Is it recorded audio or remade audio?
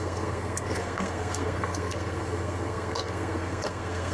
remade